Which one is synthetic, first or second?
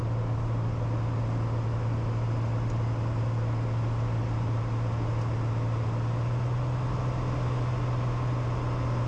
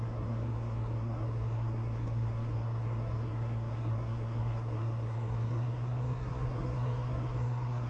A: second